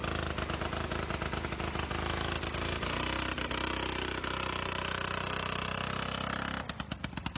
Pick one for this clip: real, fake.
real